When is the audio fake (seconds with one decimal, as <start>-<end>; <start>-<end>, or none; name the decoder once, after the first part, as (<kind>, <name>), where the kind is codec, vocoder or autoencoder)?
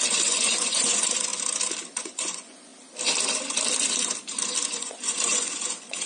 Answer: 0.0-1.3 (vocoder, Vocos); 1.9-2.7; 4.7-6.1